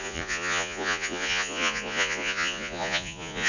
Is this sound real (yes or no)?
no